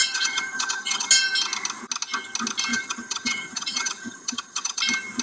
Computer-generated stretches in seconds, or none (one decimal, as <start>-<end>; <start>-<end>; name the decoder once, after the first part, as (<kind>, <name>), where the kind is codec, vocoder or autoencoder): 0.0-1.1 (vocoder, HiFi-GAN); 2.7-4.8